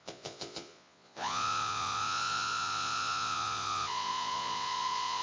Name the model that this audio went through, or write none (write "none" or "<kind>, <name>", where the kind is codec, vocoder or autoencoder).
vocoder, Vocos